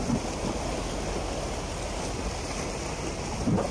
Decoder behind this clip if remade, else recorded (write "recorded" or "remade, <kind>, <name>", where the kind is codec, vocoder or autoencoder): recorded